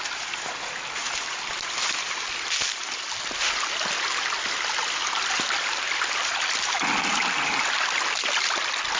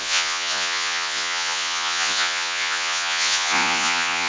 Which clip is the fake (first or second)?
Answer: second